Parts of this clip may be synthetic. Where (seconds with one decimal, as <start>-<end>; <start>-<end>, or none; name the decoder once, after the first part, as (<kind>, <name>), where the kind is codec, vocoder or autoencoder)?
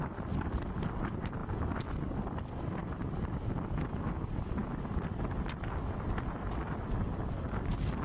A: 0.0-1.4 (vocoder, BigVGAN v2); 2.1-4.6